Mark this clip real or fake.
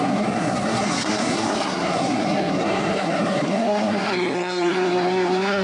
fake